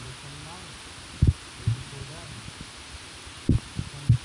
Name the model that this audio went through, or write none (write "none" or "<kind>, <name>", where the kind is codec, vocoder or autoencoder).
none